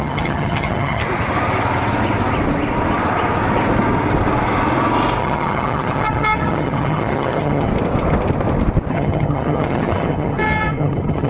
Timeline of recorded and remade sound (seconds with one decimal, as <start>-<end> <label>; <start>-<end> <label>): 0.0-1.0 remade; 1.0-5.2 recorded; 5.2-7.7 remade; 7.7-8.9 recorded; 8.9-11.3 remade